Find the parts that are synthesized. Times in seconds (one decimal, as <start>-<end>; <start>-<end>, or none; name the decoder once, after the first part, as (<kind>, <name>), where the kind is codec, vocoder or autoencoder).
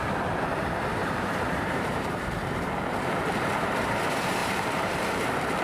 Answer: 1.0-3.1 (vocoder, BigVGAN v2); 4.4-5.6